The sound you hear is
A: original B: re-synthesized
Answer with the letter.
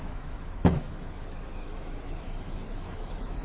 B